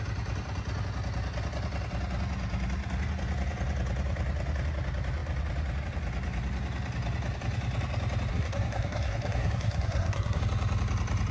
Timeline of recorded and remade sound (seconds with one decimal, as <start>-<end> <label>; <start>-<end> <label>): 0.0-8.3 recorded; 8.3-10.4 remade; 10.4-11.3 recorded